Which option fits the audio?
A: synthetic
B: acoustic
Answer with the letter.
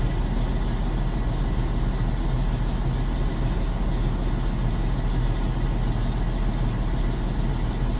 B